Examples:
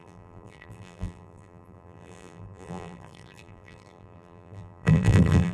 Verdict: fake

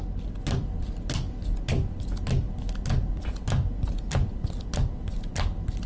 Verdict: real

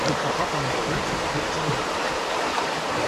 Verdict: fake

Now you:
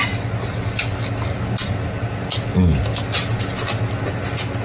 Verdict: real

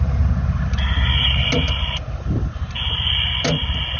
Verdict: real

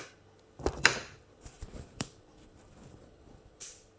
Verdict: fake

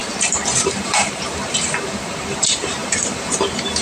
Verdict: fake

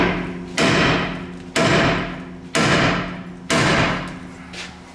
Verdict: real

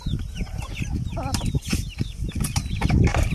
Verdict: real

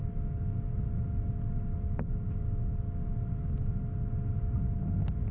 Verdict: real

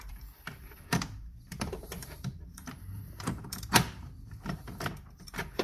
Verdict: fake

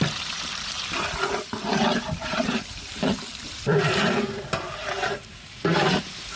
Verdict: fake